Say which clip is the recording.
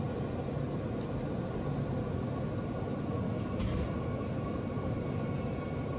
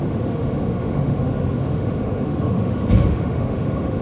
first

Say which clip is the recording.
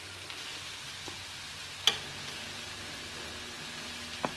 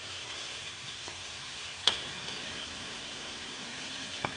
first